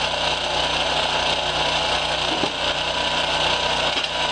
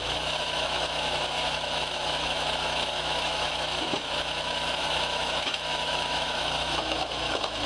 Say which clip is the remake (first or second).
second